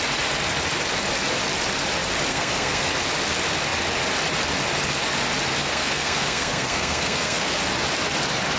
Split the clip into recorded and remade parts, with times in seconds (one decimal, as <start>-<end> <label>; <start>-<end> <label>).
0.0-2.3 recorded; 2.3-2.9 remade; 2.9-5.6 recorded; 5.6-7.6 remade; 7.6-8.6 recorded

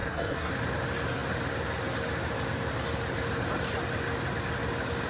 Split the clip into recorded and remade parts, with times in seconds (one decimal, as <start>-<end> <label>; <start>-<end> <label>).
0.0-0.5 remade; 0.5-5.1 recorded